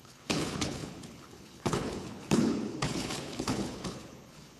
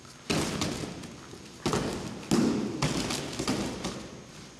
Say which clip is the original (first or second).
second